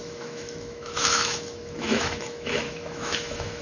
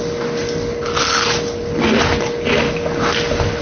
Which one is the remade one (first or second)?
first